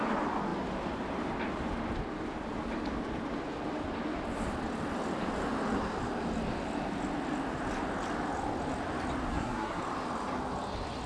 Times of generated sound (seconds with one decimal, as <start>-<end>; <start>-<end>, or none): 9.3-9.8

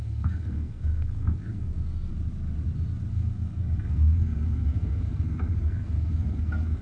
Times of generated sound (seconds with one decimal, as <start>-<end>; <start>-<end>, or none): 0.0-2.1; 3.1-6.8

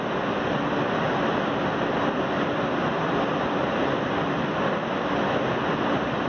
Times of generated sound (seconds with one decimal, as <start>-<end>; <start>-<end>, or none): 3.6-4.5